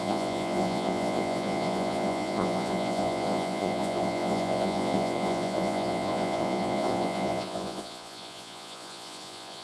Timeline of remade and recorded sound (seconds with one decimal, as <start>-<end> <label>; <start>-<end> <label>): 0.0-9.6 remade